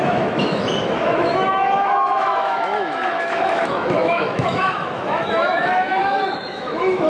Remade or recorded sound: remade